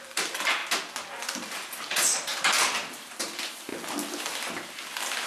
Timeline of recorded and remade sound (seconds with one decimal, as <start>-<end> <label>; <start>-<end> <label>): 0.0-0.6 remade; 0.6-1.1 recorded; 1.1-3.7 remade; 3.7-4.3 recorded; 4.3-5.3 remade